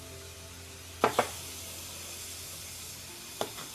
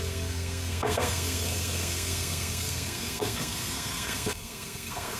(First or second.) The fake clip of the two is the second